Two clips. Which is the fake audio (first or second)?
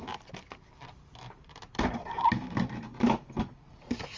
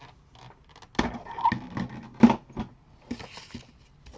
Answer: first